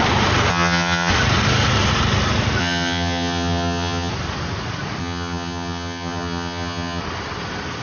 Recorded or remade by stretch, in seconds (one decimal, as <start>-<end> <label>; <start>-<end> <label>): 0.0-0.5 recorded; 0.5-1.1 remade; 1.1-2.6 recorded; 2.6-4.1 remade; 4.1-5.0 recorded; 5.0-7.0 remade; 7.0-7.8 recorded